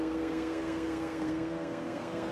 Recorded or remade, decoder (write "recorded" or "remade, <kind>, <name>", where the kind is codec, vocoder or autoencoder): remade, codec, SNAC